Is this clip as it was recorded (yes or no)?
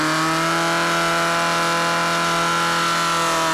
yes